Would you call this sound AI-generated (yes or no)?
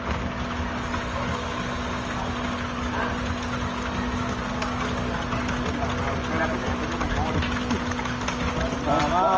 no